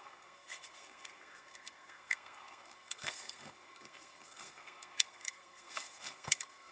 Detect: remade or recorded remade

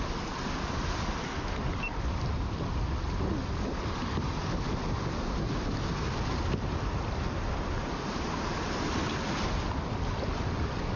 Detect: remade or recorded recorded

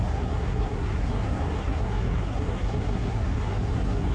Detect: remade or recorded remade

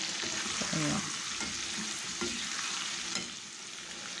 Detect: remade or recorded recorded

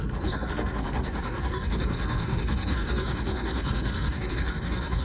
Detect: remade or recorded remade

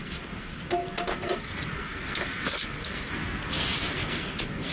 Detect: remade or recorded remade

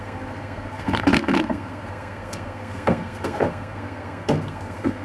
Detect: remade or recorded remade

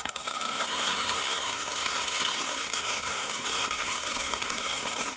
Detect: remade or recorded remade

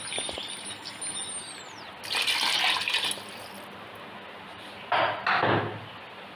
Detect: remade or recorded recorded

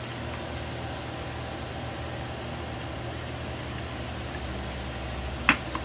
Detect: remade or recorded recorded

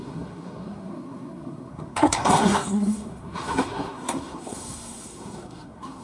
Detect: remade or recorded remade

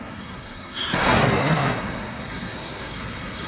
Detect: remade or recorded remade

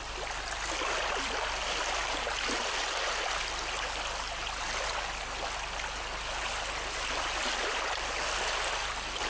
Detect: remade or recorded recorded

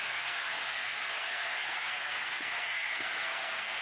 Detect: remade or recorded remade